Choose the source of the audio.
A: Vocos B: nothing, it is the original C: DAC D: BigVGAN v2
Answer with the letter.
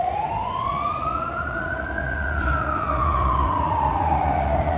A